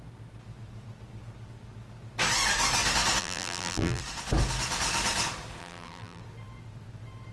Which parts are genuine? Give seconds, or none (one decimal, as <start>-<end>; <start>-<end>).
0.0-3.2; 4.0-5.6; 6.2-7.3